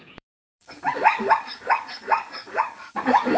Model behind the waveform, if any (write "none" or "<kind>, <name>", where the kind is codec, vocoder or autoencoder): codec, DAC